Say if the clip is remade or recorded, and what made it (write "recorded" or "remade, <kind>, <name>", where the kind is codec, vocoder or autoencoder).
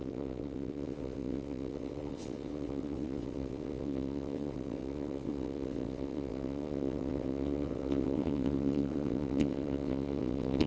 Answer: remade, vocoder, WaveNeXt